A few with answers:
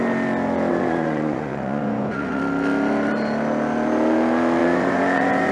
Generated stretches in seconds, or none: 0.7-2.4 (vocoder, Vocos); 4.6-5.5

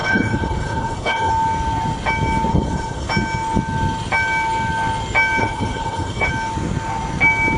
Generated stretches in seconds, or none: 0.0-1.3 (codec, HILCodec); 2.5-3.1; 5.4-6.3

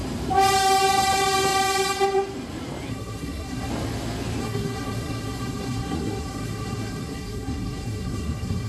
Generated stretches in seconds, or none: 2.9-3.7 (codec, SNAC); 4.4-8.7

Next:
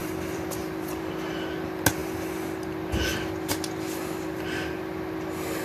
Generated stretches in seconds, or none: 0.0-1.0 (vocoder, BigVGAN v2)

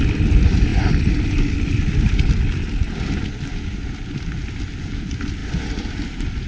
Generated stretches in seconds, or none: none